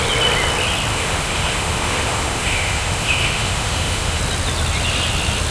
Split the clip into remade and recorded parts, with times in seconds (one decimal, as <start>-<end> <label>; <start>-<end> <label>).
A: 0.0-0.9 recorded; 0.9-4.2 remade; 4.2-5.5 recorded